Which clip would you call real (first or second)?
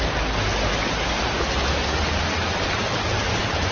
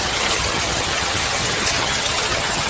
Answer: first